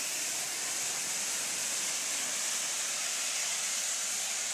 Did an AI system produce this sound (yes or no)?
no